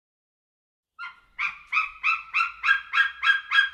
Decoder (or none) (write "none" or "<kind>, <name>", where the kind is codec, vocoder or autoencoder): none